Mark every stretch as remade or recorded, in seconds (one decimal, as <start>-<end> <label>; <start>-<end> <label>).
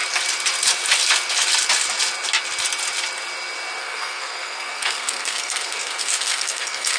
0.0-3.8 recorded; 3.8-7.0 remade